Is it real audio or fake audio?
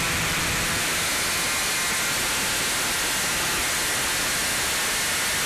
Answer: real